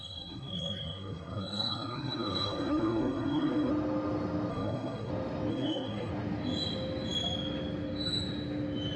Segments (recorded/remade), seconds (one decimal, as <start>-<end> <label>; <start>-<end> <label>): 0.0-3.7 remade; 3.7-4.5 recorded; 4.5-5.1 remade; 5.1-5.5 recorded; 5.5-6.1 remade; 6.1-9.0 recorded